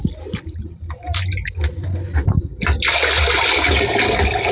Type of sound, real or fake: real